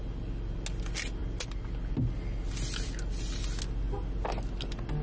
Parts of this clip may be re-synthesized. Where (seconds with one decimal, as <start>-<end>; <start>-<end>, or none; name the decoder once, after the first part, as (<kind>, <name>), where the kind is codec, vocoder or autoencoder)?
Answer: none